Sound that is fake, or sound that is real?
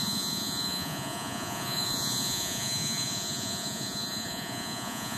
fake